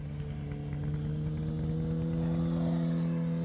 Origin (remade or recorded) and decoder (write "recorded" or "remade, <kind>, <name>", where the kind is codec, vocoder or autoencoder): recorded